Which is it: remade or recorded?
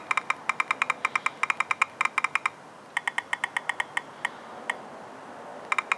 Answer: recorded